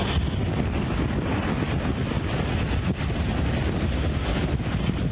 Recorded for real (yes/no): yes